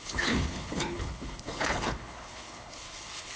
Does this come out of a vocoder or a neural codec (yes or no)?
yes